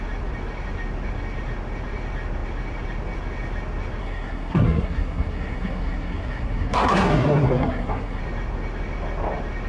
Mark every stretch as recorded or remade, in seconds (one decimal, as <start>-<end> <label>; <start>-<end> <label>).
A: 0.0-4.0 recorded; 4.0-8.2 remade; 8.2-9.7 recorded